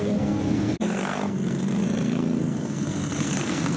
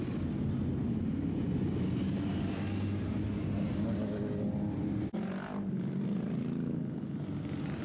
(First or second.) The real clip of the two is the second